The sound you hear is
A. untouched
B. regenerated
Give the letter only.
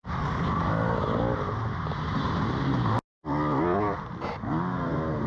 A